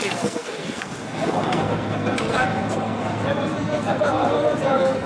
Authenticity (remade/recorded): remade